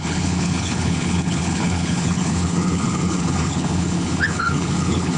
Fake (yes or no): yes